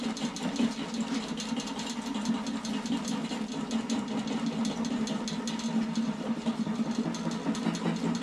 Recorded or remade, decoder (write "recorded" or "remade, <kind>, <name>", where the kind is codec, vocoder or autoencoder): recorded